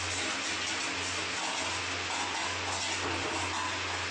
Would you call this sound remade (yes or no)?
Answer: no